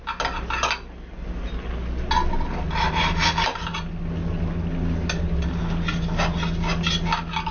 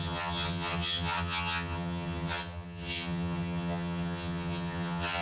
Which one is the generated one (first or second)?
second